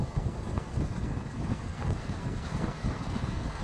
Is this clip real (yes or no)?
no